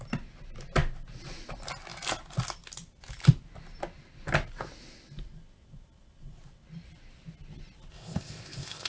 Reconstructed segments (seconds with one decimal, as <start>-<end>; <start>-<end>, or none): 7.9-8.9